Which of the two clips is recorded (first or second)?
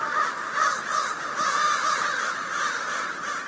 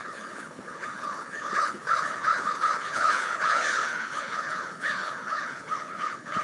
first